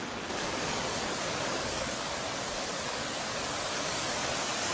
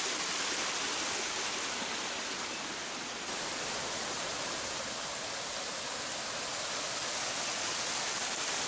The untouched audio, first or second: second